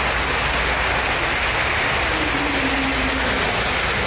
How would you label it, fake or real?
real